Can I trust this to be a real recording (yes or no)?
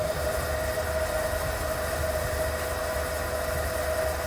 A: yes